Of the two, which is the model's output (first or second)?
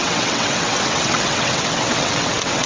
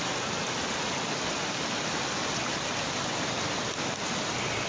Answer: first